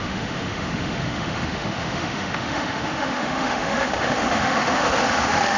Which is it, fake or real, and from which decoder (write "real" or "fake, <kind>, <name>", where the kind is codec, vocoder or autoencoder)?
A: fake, autoencoder, DAC-VAE